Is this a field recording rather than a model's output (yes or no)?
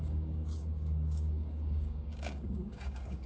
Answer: no